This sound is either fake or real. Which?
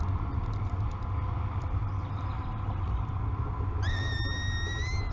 real